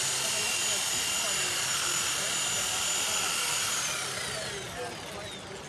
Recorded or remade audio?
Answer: recorded